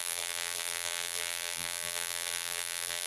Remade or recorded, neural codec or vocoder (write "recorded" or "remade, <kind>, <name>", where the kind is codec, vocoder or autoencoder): remade, vocoder, BigVGAN v2